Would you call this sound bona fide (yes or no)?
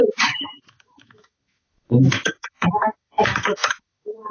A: no